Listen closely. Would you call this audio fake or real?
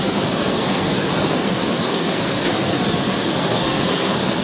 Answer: fake